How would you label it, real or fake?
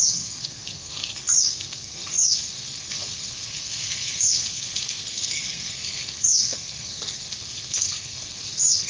fake